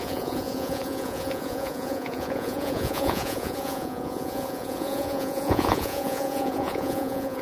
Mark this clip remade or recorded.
remade